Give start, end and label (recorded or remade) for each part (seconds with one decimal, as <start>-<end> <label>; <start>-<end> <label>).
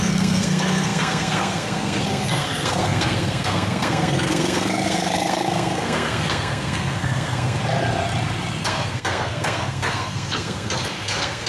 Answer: 0.0-7.6 remade; 7.6-8.6 recorded; 8.6-11.5 remade